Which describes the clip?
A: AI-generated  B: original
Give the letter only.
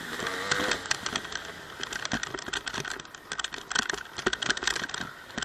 B